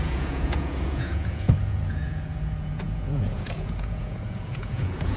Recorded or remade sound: remade